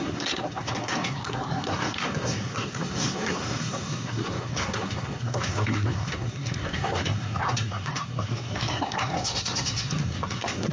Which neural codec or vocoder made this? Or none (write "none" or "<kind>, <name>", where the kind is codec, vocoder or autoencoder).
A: codec, SNAC